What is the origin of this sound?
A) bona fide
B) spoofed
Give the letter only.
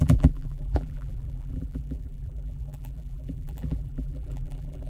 B